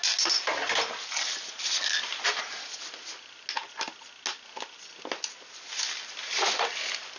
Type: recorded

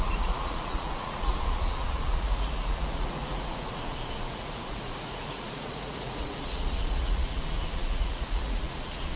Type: remade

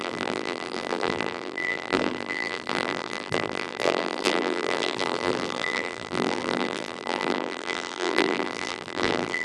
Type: remade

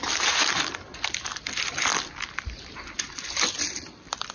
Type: recorded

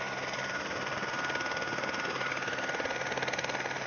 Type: recorded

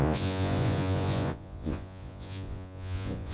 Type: remade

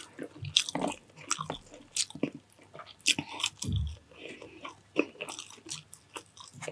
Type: recorded